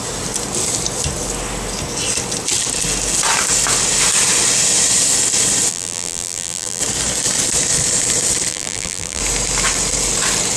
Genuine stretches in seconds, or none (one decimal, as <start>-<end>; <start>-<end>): 0.0-5.7; 6.8-8.5; 9.2-10.6